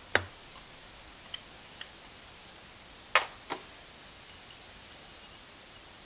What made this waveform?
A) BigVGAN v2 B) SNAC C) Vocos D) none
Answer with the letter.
D